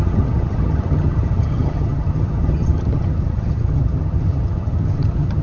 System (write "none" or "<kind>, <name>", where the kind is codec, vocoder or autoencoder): vocoder, HiFi-GAN